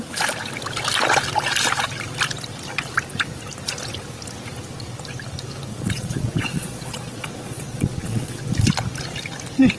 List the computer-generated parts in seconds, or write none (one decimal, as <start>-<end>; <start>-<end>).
5.7-8.4